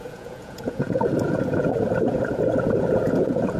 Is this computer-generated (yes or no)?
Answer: yes